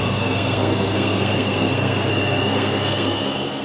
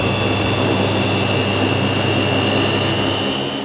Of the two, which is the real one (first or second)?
second